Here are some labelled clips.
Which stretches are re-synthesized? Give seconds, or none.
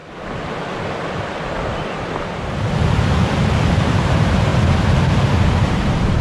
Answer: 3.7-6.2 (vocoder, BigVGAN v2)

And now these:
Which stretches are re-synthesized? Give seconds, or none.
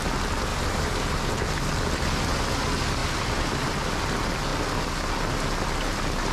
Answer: 0.5-1.7 (vocoder, BigVGAN v2); 3.0-3.9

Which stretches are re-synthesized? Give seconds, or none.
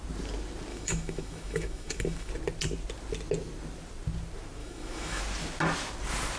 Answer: 0.7-2.3 (autoencoder, DAC-VAE); 4.6-5.2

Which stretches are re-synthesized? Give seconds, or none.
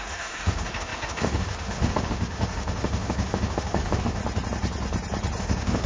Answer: 0.0-4.2 (autoencoder, DAC-VAE); 5.4-5.9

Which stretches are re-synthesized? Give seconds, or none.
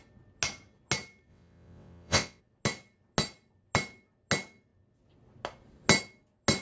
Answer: 1.3-2.4 (vocoder, WaveNeXt)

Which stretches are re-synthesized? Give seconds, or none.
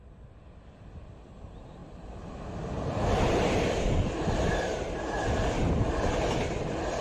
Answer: 1.8-5.6 (vocoder, BigVGAN v2)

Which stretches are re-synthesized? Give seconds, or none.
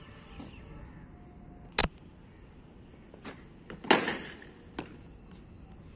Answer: none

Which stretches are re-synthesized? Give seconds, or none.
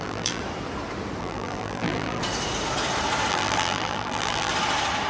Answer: 0.0-0.4 (vocoder, BigVGAN v2); 1.2-2.2; 3.3-4.5